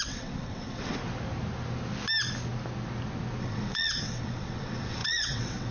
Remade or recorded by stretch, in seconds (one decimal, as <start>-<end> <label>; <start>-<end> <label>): 0.0-1.0 remade; 1.0-3.4 recorded; 3.4-5.7 remade